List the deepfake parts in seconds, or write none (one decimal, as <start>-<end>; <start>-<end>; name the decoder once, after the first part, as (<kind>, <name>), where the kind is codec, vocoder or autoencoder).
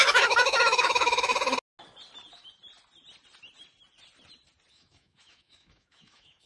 0.0-1.3 (autoencoder, DAC-VAE); 4.7-6.5